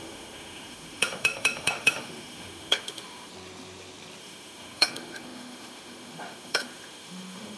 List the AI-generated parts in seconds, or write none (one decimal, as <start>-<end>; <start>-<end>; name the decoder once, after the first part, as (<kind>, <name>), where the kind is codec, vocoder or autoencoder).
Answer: 0.0-3.3 (autoencoder, DAC-VAE); 4.2-7.6